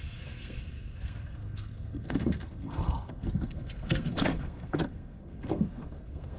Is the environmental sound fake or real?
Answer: fake